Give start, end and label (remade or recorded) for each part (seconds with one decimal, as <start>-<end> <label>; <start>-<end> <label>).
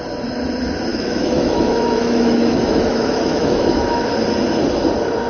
0.0-0.9 recorded; 0.9-4.1 remade; 4.1-5.3 recorded